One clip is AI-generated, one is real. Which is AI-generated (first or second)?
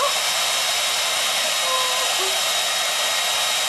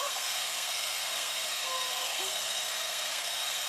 second